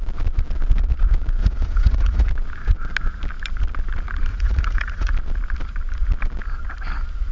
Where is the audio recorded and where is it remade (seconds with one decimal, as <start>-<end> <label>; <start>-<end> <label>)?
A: 0.0-1.4 recorded; 1.4-2.3 remade; 2.3-4.3 recorded; 4.3-5.1 remade; 5.1-7.3 recorded